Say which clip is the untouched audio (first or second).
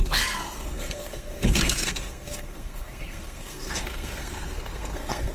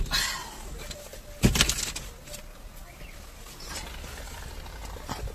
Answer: second